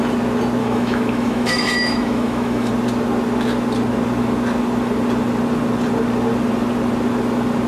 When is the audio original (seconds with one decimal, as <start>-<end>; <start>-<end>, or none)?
0.0-0.6; 2.7-7.7